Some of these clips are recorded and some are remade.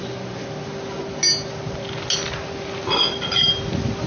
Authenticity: recorded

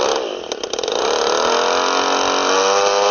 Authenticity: recorded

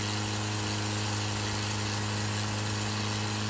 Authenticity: recorded